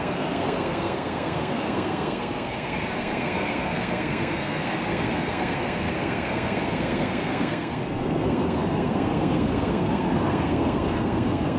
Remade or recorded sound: remade